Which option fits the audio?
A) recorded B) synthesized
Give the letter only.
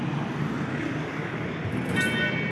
A